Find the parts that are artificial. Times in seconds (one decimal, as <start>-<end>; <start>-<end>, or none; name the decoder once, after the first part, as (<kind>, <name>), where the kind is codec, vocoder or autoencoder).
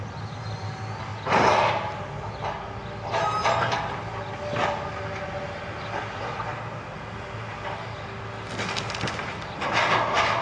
none